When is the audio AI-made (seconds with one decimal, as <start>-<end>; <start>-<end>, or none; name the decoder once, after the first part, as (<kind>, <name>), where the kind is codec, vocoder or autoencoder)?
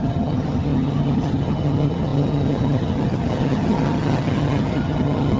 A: 0.0-5.4 (vocoder, HiFi-GAN)